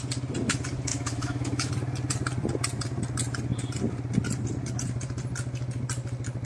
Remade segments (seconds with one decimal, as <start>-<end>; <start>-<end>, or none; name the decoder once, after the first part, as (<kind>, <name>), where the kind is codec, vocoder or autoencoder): 0.9-1.7 (autoencoder, DAC-VAE)